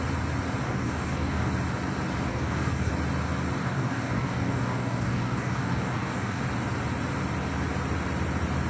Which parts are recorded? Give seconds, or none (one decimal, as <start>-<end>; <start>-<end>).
0.0-0.6; 1.5-2.3; 2.9-3.6; 6.4-8.7